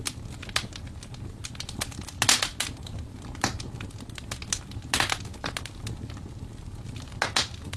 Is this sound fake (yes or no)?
no